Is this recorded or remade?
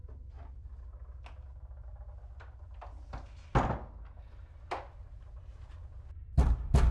recorded